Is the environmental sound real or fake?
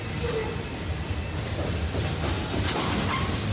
real